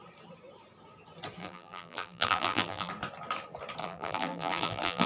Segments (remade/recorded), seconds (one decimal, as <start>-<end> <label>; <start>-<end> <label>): 0.0-1.4 recorded; 1.4-2.9 remade; 2.9-3.8 recorded; 3.8-5.1 remade